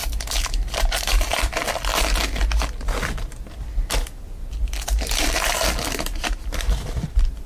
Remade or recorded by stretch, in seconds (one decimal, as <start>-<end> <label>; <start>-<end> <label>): 0.0-1.1 recorded; 1.1-1.9 remade; 1.9-6.4 recorded; 6.4-7.5 remade